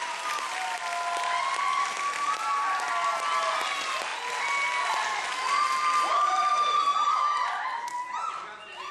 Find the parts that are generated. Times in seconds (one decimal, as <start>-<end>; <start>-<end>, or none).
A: none